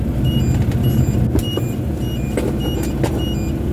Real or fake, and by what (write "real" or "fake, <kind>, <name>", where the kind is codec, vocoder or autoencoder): real